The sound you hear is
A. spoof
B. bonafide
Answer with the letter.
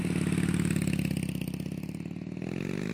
B